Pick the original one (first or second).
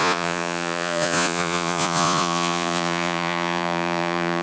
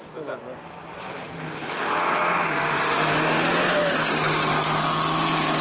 second